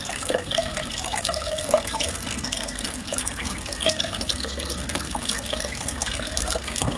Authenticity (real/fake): fake